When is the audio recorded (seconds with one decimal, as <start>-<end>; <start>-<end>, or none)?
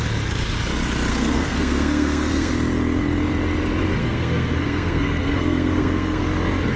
0.0-1.1; 2.5-4.0; 6.2-6.8